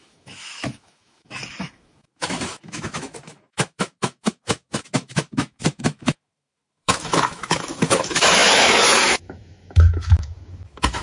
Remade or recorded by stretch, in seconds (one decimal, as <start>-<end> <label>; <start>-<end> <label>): 0.0-11.0 remade